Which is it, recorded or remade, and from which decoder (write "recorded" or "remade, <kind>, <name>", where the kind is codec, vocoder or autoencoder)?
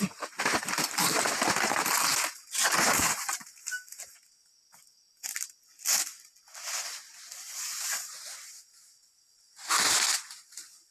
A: recorded